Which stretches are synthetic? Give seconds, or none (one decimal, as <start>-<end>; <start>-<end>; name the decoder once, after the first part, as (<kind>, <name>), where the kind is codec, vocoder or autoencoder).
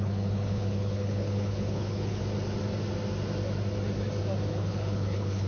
0.0-2.2 (codec, HILCodec); 4.5-5.5